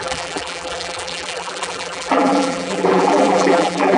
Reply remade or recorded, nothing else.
remade